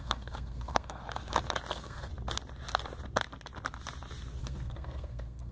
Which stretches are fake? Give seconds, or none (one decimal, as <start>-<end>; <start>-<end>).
0.0-1.0; 1.7-2.1; 4.4-5.5